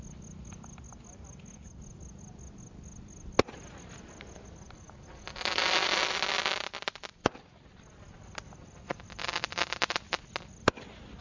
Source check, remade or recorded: recorded